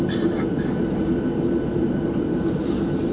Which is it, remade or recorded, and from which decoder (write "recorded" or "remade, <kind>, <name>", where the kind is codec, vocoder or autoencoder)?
recorded